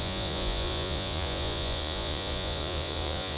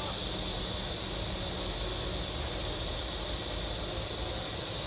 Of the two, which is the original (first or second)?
second